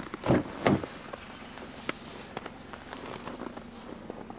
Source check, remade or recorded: recorded